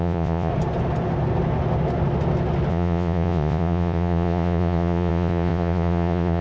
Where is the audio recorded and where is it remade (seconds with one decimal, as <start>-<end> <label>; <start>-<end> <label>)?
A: 0.0-0.5 remade; 0.5-2.7 recorded; 2.7-6.4 remade